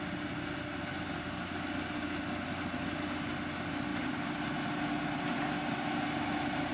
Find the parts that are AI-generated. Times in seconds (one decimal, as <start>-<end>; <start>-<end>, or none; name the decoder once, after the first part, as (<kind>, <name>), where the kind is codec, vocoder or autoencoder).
3.9-4.6 (vocoder, BigVGAN v2)